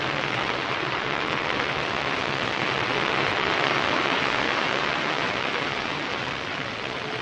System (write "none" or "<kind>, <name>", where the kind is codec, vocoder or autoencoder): vocoder, WaveNeXt